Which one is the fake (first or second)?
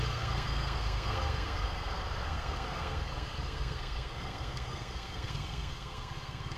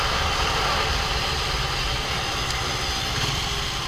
first